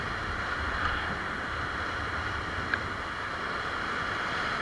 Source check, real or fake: real